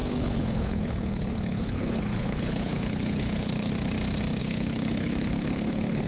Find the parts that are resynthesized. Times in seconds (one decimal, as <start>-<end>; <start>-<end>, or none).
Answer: 0.0-3.7; 4.4-6.1